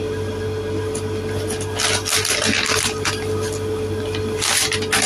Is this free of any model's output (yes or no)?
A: yes